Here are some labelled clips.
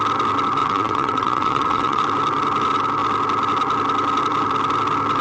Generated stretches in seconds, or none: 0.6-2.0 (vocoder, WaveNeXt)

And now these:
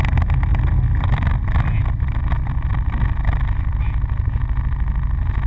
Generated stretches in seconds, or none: none

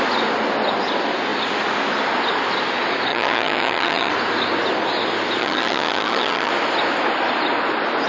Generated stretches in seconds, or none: 3.1-4.1 (vocoder, HiFi-GAN); 5.4-6.5